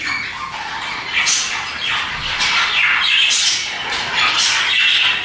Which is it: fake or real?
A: real